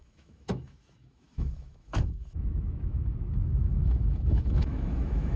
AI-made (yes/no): yes